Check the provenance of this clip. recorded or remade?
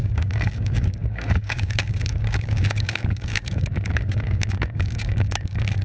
remade